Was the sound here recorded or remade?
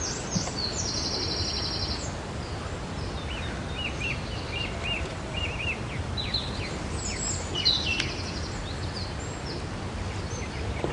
recorded